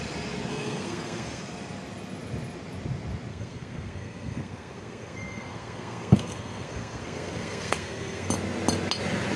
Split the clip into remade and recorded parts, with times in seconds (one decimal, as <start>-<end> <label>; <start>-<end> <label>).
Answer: 0.0-0.5 recorded; 0.5-1.4 remade; 1.4-3.3 recorded; 3.3-8.3 remade; 8.3-9.4 recorded